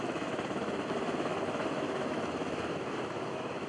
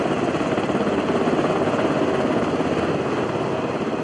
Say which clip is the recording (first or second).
second